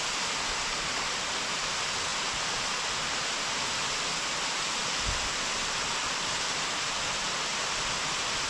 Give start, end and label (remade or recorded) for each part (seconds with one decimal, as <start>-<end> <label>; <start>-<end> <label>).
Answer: 0.0-8.5 recorded